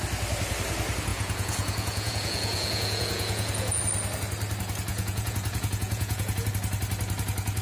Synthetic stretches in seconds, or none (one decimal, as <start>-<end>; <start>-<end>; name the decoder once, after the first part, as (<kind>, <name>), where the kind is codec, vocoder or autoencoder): 1.1-3.8 (vocoder, Vocos); 4.9-6.5